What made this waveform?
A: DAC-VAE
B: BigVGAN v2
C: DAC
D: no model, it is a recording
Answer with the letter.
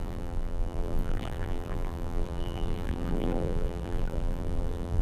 B